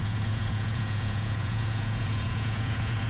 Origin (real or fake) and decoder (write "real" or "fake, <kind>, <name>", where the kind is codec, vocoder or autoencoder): fake, vocoder, Vocos